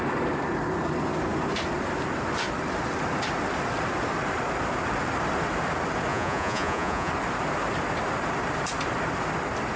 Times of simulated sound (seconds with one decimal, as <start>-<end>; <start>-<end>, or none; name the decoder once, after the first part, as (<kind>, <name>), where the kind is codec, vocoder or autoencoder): 6.1-7.1 (vocoder, Vocos)